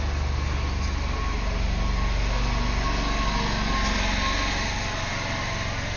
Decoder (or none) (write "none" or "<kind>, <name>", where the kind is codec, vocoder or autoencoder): none